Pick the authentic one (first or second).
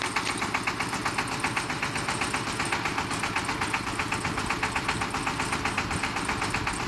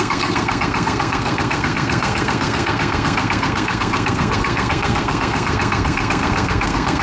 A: first